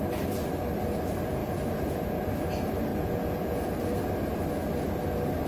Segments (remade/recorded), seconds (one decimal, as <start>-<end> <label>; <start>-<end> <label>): 0.0-1.4 recorded; 1.4-2.0 remade; 2.0-2.9 recorded; 2.9-3.7 remade; 3.7-5.5 recorded